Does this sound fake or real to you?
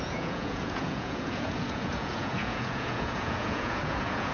fake